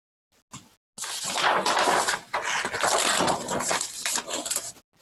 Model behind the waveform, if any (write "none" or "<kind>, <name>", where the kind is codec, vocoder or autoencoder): none